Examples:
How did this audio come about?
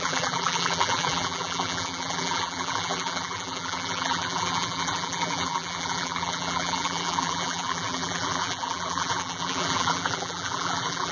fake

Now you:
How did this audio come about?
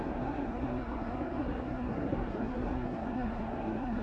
fake